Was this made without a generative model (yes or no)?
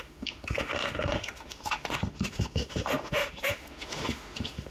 no